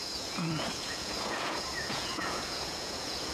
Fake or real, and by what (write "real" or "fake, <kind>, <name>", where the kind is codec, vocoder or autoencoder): fake, vocoder, Vocos